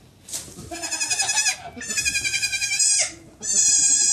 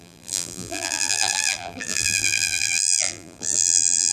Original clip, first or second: first